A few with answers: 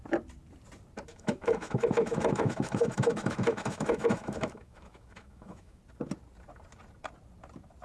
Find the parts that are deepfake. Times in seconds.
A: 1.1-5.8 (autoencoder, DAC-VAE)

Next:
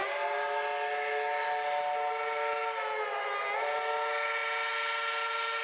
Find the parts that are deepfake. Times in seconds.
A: none

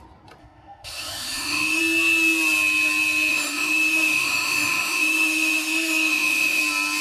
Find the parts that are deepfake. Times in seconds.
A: 0.4-1.8 (autoencoder, DAC-VAE); 3.3-6.6

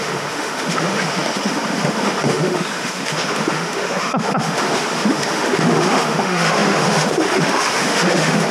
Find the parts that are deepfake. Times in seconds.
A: 0.0-8.5 (autoencoder, DAC-VAE)